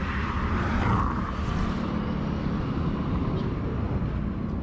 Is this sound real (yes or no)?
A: yes